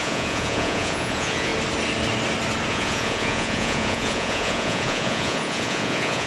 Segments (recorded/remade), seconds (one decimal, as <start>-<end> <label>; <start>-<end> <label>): 0.0-1.5 remade; 1.5-2.7 recorded; 2.7-6.3 remade